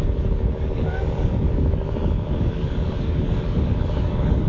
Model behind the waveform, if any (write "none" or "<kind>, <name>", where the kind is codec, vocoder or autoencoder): codec, DAC